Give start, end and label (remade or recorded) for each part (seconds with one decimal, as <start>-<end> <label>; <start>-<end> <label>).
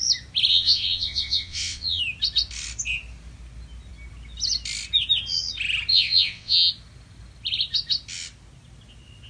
0.0-0.5 recorded; 0.5-2.0 remade; 2.0-5.9 recorded; 5.9-6.7 remade; 6.7-9.3 recorded